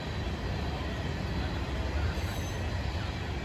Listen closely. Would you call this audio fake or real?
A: real